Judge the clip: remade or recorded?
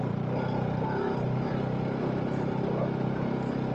recorded